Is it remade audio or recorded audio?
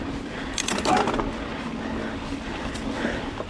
recorded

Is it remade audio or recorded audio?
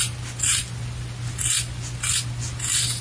recorded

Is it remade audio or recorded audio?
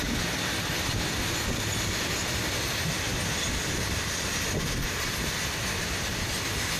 recorded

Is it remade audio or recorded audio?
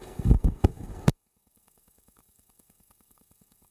remade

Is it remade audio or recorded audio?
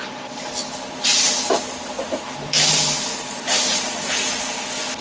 recorded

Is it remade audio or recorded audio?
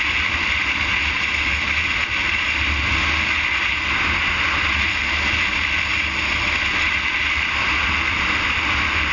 recorded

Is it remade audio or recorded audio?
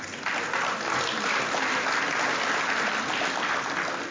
recorded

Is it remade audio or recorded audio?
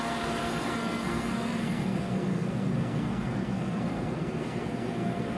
remade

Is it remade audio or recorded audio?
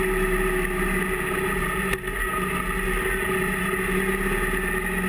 recorded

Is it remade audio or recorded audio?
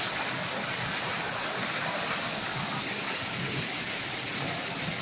recorded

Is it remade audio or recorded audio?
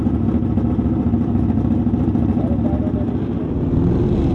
recorded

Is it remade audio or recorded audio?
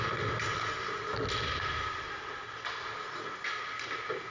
recorded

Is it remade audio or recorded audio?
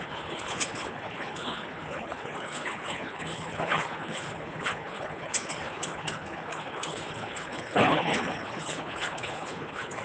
remade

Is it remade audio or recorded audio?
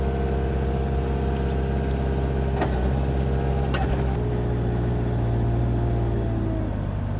recorded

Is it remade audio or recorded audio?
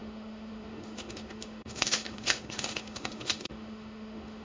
remade